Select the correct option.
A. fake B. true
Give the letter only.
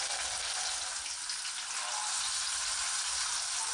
B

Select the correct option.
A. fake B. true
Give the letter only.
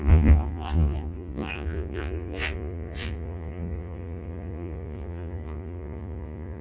A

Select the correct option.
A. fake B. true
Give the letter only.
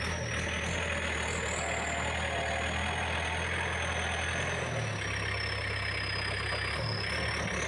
B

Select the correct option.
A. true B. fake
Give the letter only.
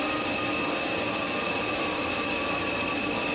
A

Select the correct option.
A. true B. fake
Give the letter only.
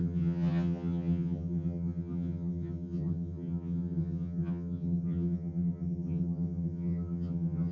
B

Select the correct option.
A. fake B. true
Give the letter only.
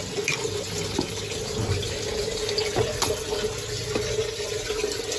B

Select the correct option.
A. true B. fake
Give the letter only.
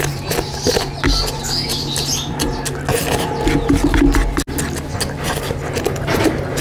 A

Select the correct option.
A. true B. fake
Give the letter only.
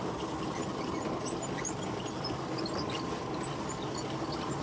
A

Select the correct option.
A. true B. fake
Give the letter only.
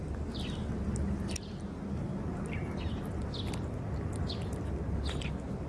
A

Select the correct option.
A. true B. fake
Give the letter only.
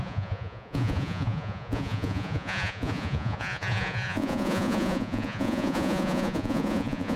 B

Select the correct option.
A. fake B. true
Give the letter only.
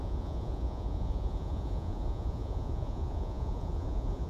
A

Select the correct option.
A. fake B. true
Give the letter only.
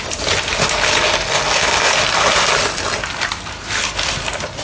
B